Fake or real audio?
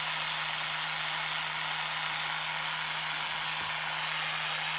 real